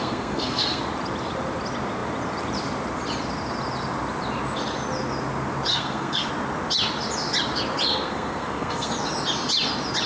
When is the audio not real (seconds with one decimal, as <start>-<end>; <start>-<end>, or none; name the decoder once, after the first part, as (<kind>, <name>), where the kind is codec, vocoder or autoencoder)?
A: 0.0-0.8 (codec, SNAC); 5.7-6.3; 7.9-8.9